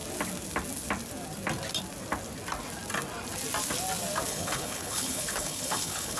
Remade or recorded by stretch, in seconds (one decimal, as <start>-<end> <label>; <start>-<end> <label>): 0.0-4.3 recorded; 4.3-6.2 remade